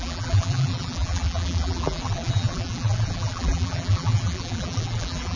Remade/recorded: remade